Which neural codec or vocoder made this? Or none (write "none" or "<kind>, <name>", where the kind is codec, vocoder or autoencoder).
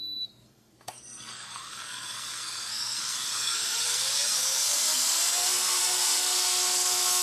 codec, SNAC